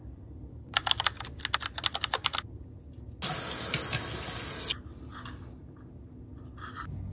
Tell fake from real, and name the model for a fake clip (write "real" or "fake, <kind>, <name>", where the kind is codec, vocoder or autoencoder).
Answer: real